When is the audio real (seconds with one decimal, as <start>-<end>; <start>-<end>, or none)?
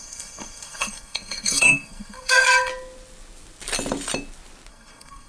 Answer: 2.7-4.7